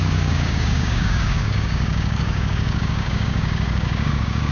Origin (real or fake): fake